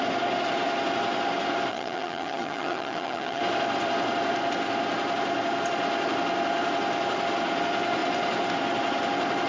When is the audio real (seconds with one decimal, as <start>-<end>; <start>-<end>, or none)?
0.0-1.7; 3.4-9.5